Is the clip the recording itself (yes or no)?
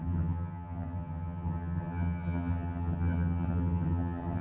no